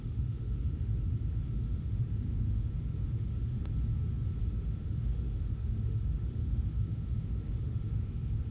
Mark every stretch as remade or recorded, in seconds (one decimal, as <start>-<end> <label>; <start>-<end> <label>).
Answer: 0.0-3.7 remade; 3.7-4.4 recorded; 4.4-8.5 remade

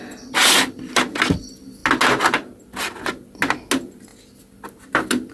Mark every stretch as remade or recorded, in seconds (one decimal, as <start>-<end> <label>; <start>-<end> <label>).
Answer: 0.0-5.3 recorded